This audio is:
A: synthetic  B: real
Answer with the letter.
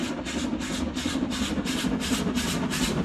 B